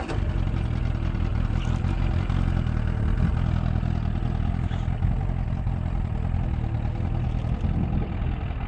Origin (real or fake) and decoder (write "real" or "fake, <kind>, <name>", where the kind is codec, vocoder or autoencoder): real